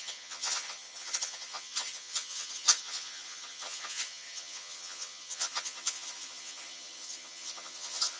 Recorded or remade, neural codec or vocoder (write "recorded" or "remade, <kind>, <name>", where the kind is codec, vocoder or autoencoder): remade, vocoder, HiFi-GAN